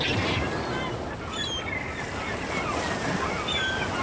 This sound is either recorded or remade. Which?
recorded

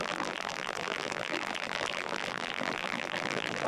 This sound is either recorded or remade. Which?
remade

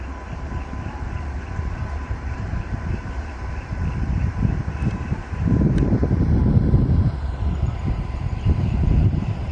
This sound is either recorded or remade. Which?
remade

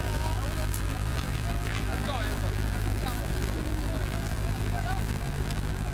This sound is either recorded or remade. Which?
remade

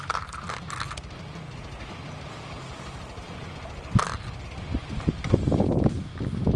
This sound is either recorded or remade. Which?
recorded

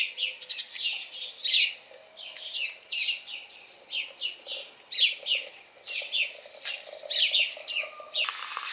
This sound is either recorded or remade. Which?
recorded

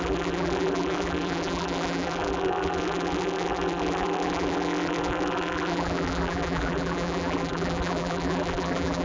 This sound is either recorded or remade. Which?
remade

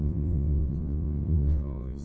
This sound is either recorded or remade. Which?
remade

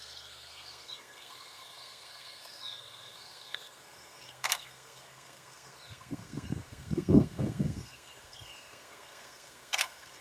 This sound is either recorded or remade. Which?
remade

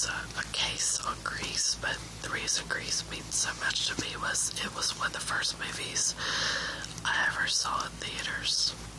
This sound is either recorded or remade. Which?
recorded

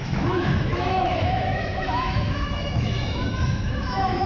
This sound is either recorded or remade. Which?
remade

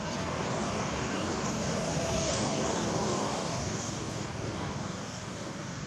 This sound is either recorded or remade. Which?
remade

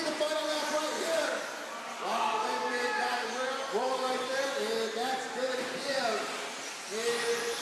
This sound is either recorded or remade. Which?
recorded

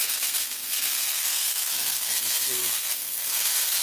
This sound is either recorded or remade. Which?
remade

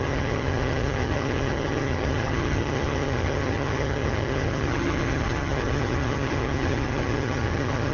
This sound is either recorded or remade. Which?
remade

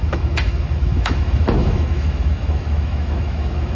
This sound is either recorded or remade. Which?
remade